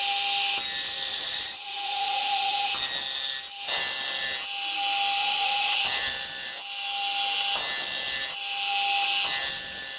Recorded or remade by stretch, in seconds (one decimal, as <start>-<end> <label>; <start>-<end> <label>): 0.0-1.1 recorded; 1.1-2.7 remade; 2.7-5.2 recorded; 5.2-5.8 remade; 5.8-10.0 recorded